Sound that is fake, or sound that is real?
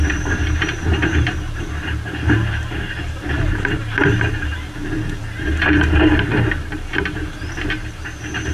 fake